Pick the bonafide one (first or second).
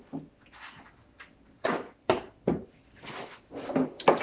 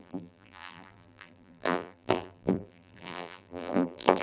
first